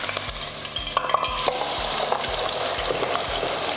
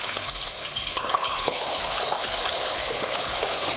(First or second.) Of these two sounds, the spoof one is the second